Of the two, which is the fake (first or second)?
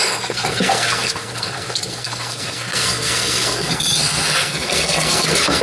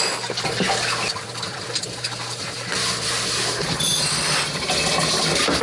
first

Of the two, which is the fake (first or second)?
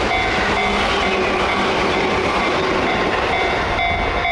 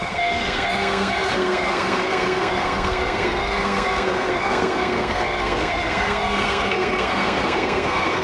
second